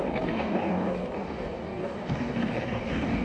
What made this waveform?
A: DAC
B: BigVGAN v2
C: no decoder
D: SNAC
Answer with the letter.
A